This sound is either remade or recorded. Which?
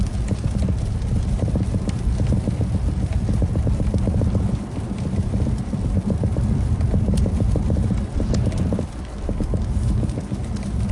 remade